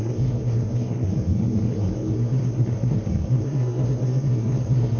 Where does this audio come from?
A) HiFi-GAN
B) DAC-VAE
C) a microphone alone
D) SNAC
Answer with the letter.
D